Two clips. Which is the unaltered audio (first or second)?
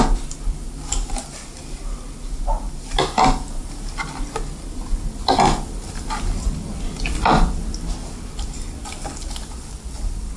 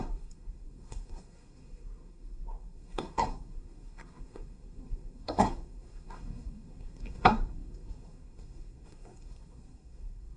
first